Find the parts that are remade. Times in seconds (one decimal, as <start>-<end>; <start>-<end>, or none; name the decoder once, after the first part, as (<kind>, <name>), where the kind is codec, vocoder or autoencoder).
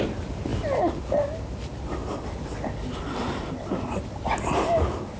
none